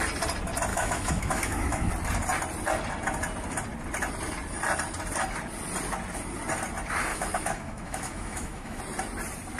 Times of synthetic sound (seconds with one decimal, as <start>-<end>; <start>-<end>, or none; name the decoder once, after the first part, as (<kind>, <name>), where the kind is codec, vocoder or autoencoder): 0.7-1.9 (autoencoder, DAC-VAE); 7.1-8.8